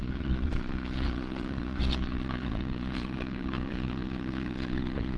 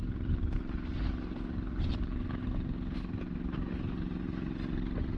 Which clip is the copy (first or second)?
first